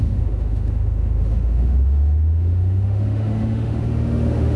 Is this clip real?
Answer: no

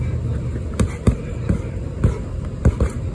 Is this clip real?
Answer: no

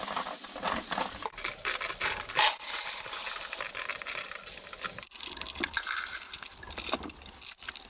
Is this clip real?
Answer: yes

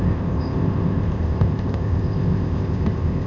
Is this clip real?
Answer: no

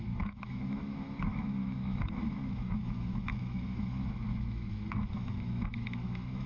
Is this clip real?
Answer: no